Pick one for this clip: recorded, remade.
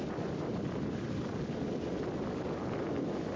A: recorded